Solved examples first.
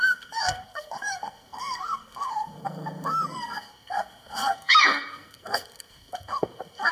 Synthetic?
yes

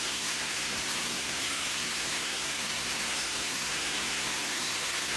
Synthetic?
yes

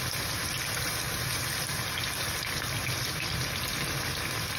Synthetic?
no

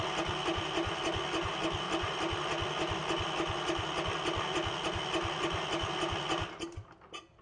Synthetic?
no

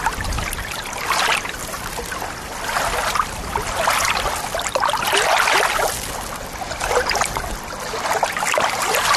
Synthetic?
no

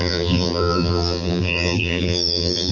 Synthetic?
yes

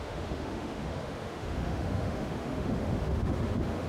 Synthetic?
yes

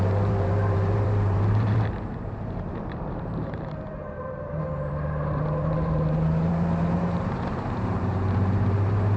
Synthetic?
yes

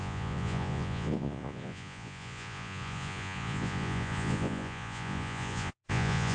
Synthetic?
yes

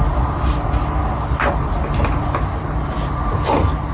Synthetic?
no